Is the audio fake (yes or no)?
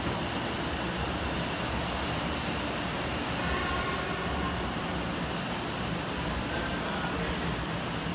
no